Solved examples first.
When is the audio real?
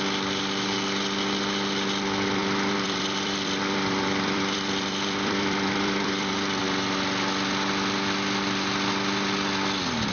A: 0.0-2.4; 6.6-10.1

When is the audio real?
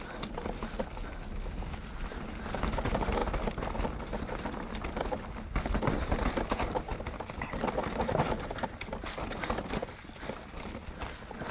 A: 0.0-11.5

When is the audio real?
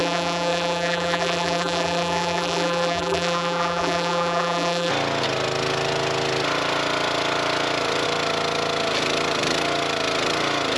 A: 4.9-10.8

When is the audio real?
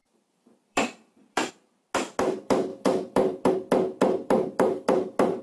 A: 1.5-2.7; 3.5-5.4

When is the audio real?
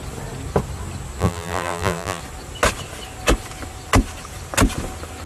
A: 0.0-1.2; 2.2-5.3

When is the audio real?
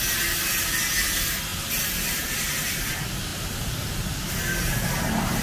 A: 0.0-5.4